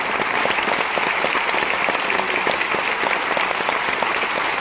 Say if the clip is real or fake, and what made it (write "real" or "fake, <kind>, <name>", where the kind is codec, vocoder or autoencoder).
real